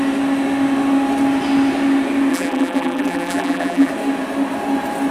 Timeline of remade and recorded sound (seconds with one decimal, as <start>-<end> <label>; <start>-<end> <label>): 0.0-2.3 recorded; 2.3-3.9 remade; 3.9-5.1 recorded

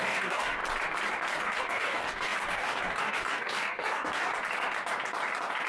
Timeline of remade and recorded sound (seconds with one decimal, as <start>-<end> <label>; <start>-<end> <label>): 0.0-0.6 remade; 0.6-1.4 recorded; 1.4-4.3 remade; 4.3-5.7 recorded